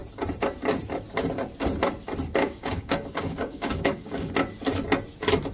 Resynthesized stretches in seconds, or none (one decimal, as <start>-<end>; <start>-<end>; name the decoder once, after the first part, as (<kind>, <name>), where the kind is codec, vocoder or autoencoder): 2.4-4.3 (codec, DAC)